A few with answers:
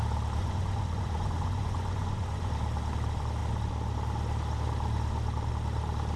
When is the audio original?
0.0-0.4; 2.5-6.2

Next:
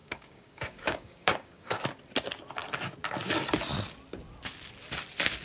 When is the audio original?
1.8-5.4

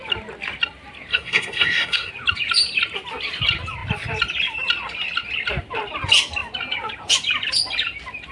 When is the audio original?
0.0-1.1; 2.1-8.3

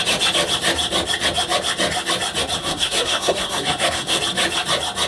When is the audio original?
0.0-2.6; 4.2-5.1

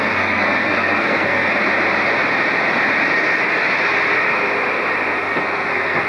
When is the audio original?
1.5-5.2